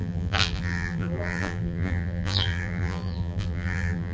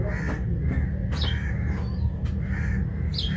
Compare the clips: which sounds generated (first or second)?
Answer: first